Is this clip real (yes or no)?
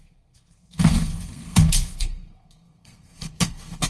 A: no